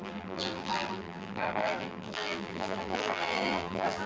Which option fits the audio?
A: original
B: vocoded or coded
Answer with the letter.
B